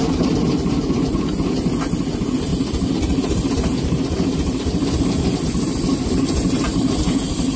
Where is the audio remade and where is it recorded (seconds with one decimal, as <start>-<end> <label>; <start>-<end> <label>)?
0.0-7.6 recorded